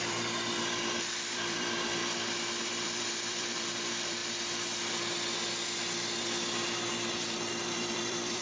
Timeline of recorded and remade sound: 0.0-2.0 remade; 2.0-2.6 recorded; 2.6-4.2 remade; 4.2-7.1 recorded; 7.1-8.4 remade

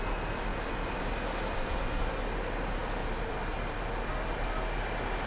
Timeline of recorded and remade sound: 0.0-3.0 recorded; 3.0-3.8 remade; 3.8-5.3 recorded

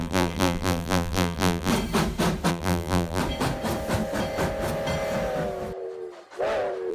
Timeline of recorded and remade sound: 0.0-1.7 remade; 1.7-2.5 recorded; 2.5-3.2 remade; 3.2-6.9 recorded

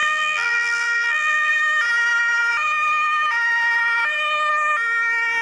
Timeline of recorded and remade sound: 0.0-1.5 remade; 1.5-5.4 recorded

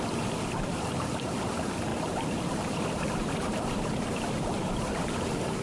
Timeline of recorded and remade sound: 0.0-1.9 recorded; 1.9-5.6 remade

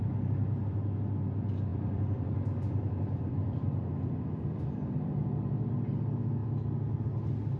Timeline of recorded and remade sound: 0.0-1.7 recorded; 1.7-5.2 remade; 5.2-7.6 recorded